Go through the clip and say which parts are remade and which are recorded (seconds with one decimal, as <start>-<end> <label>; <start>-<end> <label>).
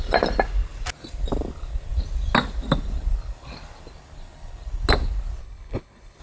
0.0-5.4 recorded; 5.4-6.2 remade